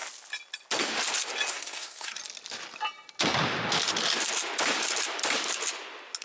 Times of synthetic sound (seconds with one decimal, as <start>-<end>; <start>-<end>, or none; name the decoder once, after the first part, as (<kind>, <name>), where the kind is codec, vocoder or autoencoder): 1.5-2.2 (codec, SNAC)